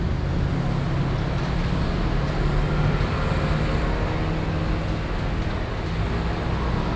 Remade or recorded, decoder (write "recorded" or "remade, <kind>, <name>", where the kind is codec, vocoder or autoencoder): recorded